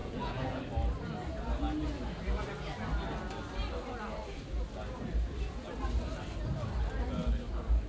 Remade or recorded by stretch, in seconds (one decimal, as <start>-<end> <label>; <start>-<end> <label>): 0.0-0.6 remade; 0.6-7.9 recorded